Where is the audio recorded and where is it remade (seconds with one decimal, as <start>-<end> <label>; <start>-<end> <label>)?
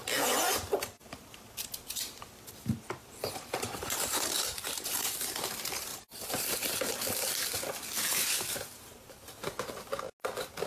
0.0-3.0 recorded; 3.0-5.4 remade; 5.4-5.9 recorded; 5.9-6.9 remade; 6.9-8.1 recorded; 8.1-9.5 remade; 9.5-10.7 recorded